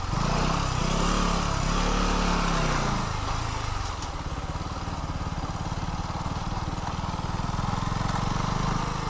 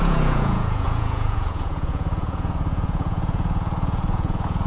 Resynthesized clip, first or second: second